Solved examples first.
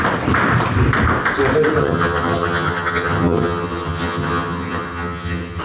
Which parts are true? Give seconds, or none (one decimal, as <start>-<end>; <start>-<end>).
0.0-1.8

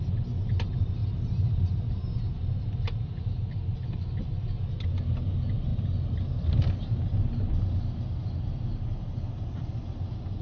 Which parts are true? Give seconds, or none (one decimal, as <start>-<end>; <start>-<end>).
0.0-10.4

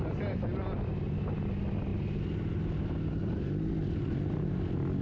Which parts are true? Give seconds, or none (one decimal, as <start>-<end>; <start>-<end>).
0.0-5.0

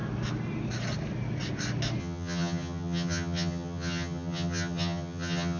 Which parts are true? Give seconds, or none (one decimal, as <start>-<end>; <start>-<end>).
0.0-2.0

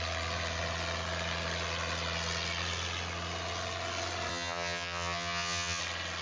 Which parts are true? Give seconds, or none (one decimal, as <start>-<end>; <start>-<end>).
0.0-4.3; 5.8-6.2

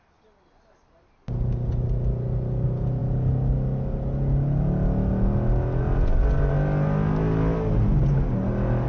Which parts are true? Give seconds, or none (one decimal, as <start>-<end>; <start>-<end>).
0.0-8.9

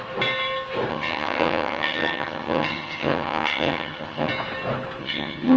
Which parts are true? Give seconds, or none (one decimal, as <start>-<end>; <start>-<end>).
0.0-0.9; 4.3-5.0

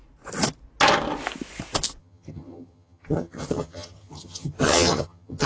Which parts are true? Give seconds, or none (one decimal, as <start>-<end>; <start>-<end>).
0.0-2.0